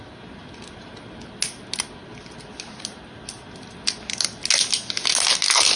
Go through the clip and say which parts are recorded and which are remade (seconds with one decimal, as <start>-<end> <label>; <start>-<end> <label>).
0.0-5.8 recorded